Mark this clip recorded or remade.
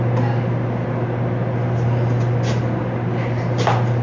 recorded